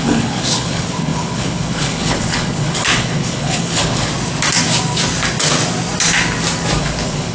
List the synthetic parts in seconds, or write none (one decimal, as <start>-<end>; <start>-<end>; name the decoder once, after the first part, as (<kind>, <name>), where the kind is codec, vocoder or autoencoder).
0.0-4.1 (codec, HILCodec); 6.8-7.3

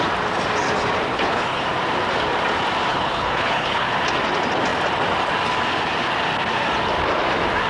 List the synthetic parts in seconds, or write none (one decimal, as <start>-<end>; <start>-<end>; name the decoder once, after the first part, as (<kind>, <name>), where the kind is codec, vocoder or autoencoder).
1.1-1.6 (codec, HILCodec); 2.9-3.9